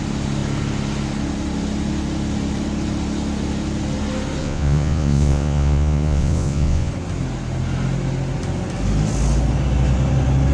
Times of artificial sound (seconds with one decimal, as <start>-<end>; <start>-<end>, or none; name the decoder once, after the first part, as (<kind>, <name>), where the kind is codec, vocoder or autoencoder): 4.4-6.9 (vocoder, Vocos)